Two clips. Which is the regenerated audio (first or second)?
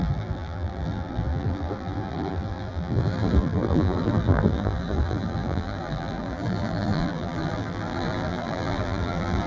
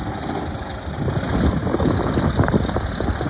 first